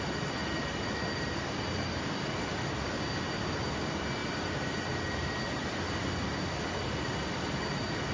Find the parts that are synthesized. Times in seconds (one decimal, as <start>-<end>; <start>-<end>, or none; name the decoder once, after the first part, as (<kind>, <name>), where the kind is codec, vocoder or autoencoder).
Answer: none